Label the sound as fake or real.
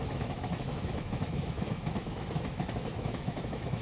fake